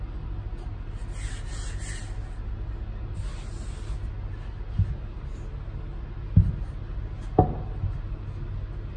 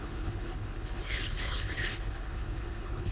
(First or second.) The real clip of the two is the first